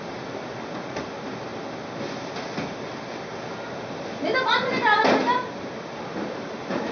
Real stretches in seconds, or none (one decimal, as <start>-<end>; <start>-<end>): 0.0-6.9